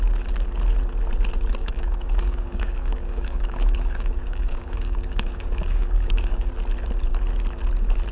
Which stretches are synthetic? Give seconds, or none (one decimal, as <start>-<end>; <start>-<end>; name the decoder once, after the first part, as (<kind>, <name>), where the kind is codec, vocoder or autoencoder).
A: 1.6-6.5 (codec, DAC)